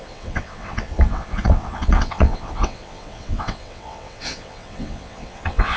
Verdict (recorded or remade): remade